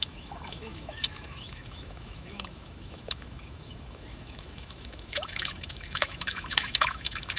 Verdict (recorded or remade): remade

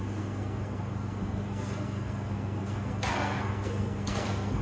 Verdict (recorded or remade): remade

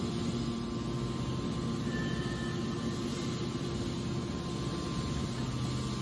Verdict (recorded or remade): recorded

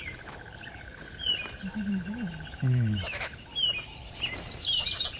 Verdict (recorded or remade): remade